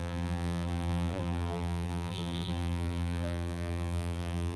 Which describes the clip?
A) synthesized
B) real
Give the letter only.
A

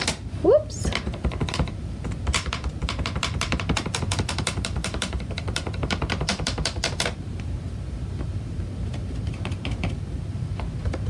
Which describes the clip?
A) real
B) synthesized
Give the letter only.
B